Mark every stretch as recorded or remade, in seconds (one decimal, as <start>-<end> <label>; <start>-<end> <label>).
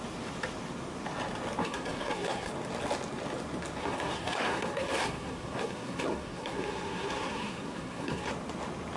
0.0-1.6 recorded; 1.6-2.5 remade; 2.5-3.8 recorded; 3.8-8.3 remade; 8.3-9.0 recorded